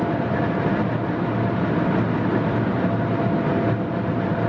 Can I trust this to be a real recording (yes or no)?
yes